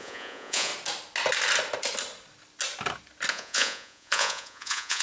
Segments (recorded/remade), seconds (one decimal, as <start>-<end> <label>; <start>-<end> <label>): 0.0-0.7 remade; 0.7-3.3 recorded; 3.3-5.0 remade